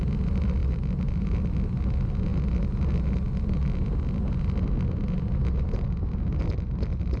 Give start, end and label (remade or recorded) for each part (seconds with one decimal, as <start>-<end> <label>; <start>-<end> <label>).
0.0-7.2 recorded